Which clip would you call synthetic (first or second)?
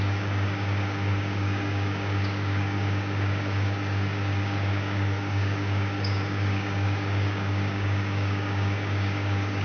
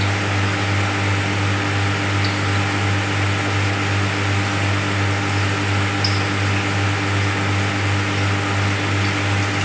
first